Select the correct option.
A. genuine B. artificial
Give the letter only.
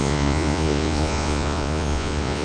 B